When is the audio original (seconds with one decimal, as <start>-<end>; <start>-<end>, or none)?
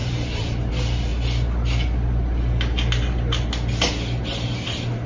0.7-5.1